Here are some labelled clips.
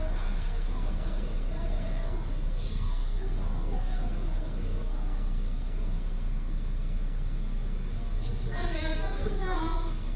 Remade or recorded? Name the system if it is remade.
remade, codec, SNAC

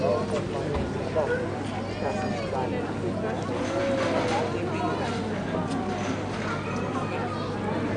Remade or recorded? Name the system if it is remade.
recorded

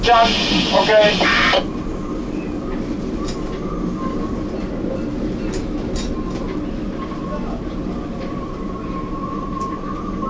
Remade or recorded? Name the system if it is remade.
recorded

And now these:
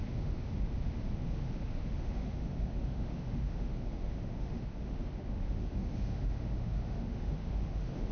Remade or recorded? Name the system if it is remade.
remade, autoencoder, DAC-VAE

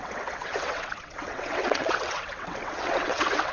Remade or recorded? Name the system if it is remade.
remade, vocoder, WaveNeXt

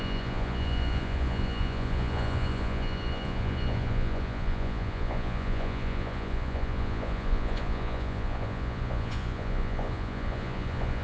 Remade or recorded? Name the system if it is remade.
remade, vocoder, Vocos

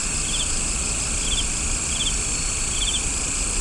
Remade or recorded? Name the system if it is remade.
recorded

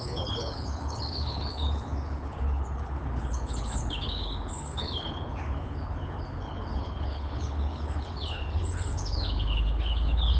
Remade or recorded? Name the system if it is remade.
remade, codec, HILCodec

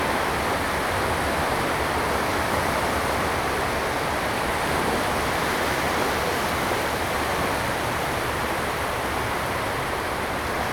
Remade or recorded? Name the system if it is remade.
recorded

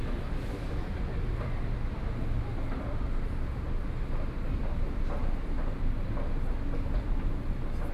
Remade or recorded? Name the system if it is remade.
recorded